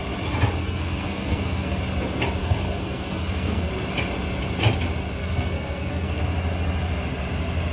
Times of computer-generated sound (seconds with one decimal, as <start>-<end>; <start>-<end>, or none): 0.6-1.8; 2.4-3.7; 5.2-6.2